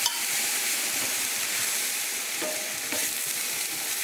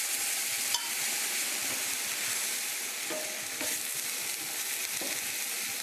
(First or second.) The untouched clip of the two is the second